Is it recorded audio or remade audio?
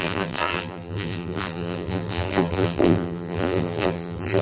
remade